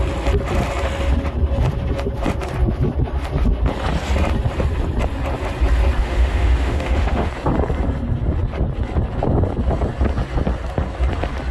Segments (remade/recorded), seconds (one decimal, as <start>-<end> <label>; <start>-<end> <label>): 0.0-6.0 recorded; 6.0-7.3 remade; 7.3-11.5 recorded